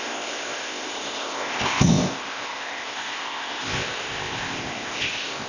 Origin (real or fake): fake